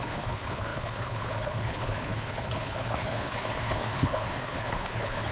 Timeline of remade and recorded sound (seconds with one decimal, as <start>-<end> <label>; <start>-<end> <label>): 0.0-5.3 remade